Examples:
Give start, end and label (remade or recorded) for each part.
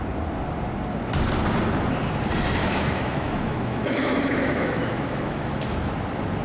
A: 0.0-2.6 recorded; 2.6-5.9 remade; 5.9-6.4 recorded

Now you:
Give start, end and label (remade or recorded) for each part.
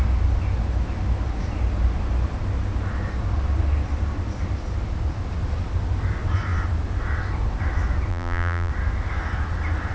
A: 0.0-8.1 recorded; 8.1-8.7 remade; 8.7-9.9 recorded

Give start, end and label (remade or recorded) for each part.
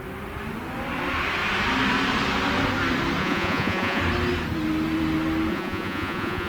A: 0.0-3.2 recorded; 3.2-4.0 remade; 4.0-5.5 recorded; 5.5-6.5 remade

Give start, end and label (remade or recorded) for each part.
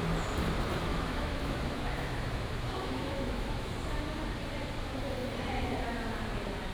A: 0.0-0.9 recorded; 0.9-3.7 remade; 3.7-6.7 recorded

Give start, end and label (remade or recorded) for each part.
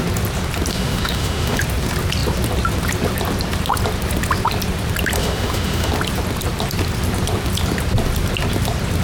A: 0.0-0.7 recorded; 0.7-1.6 remade; 1.6-5.2 recorded; 5.2-5.9 remade; 5.9-9.0 recorded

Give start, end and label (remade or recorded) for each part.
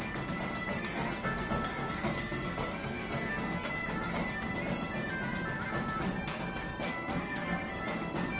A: 0.0-0.7 recorded; 0.7-3.7 remade; 3.7-6.9 recorded; 6.9-7.7 remade; 7.7-8.4 recorded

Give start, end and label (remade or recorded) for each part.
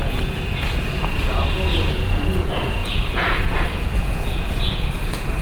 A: 0.0-5.4 remade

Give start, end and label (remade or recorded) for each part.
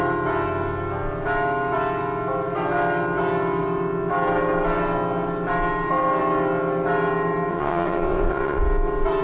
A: 0.0-7.5 recorded; 7.5-8.6 remade; 8.6-9.2 recorded